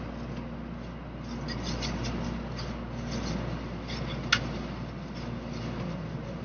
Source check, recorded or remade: recorded